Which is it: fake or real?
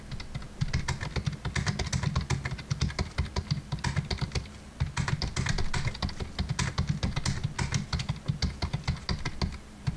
real